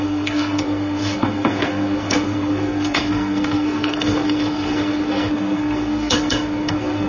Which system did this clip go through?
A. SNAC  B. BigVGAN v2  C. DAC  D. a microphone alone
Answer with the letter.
A